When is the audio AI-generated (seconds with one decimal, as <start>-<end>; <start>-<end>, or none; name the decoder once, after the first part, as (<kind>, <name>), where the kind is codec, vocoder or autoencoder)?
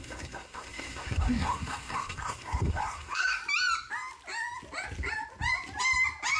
0.0-3.4 (codec, SNAC)